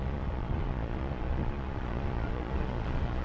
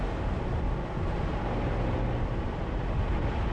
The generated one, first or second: first